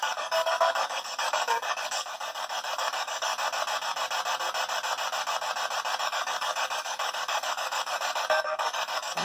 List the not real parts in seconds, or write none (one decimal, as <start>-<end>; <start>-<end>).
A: 0.0-3.3; 6.0-9.2

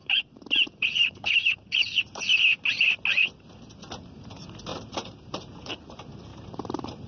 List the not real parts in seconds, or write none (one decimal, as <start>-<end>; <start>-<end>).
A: 0.0-2.2; 4.7-5.8; 6.3-7.1

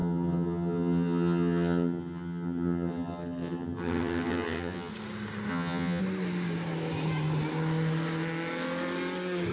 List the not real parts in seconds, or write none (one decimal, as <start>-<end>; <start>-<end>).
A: 0.0-4.9; 5.5-6.0

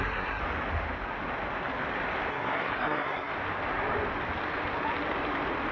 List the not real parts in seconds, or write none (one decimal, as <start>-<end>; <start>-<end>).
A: 0.0-0.4; 2.3-3.3

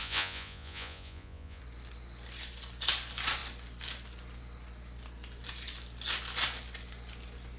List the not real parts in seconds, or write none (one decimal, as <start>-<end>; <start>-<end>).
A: 0.0-1.6